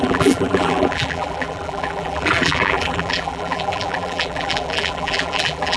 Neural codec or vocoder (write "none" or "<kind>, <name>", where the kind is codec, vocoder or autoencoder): vocoder, BigVGAN v2